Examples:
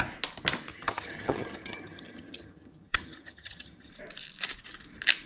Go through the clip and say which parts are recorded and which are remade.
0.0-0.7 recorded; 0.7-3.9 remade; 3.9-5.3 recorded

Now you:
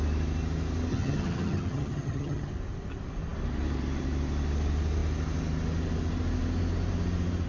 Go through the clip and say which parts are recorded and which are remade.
0.0-0.9 recorded; 0.9-2.5 remade; 2.5-7.5 recorded

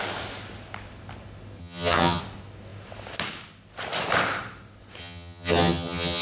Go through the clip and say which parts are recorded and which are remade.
0.0-1.6 recorded; 1.6-2.2 remade; 2.2-5.0 recorded; 5.0-6.2 remade

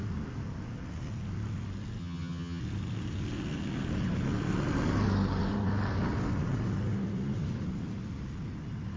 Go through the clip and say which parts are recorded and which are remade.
0.0-2.0 recorded; 2.0-2.6 remade; 2.6-9.0 recorded

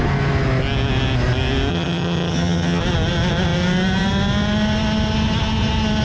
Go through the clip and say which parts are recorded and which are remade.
0.0-1.7 recorded; 1.7-2.8 remade; 2.8-6.0 recorded